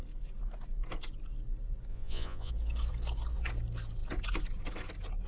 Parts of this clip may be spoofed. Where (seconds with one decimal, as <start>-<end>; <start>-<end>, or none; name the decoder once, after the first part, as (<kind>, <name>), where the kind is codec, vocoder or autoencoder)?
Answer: 1.9-2.5 (vocoder, Vocos)